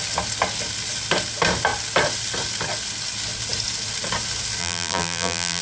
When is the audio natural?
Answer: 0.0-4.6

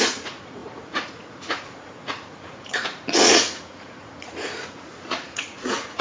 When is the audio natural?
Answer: none